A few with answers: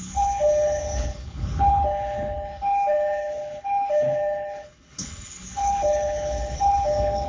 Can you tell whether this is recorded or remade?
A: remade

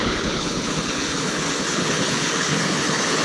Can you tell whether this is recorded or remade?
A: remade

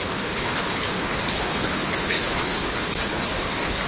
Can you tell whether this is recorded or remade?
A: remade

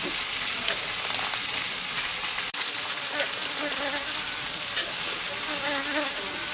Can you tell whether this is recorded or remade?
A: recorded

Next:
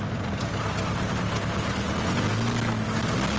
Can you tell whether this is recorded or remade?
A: recorded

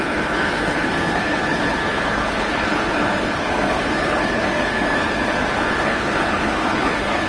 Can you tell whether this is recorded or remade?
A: remade